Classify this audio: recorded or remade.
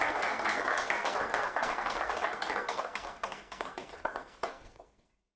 remade